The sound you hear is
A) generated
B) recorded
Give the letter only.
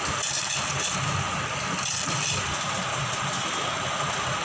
B